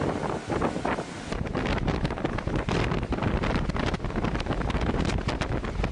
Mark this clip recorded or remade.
recorded